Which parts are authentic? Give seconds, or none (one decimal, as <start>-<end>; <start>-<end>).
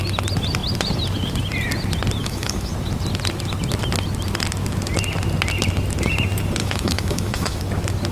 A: 0.0-2.2; 2.7-6.6; 7.6-8.1